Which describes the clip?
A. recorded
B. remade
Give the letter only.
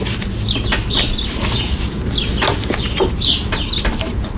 A